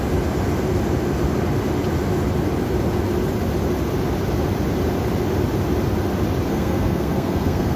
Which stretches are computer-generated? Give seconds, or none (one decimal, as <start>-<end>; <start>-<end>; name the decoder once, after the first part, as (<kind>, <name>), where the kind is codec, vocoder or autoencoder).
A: 6.5-7.8 (codec, SNAC)